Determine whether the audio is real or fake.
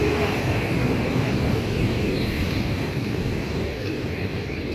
fake